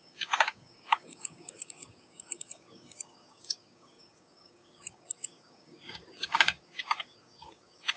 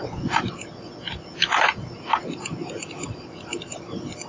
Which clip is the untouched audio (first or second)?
second